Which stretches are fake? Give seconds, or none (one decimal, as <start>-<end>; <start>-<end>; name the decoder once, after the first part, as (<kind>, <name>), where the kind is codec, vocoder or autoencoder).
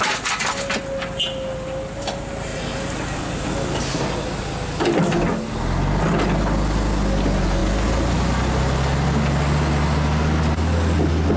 none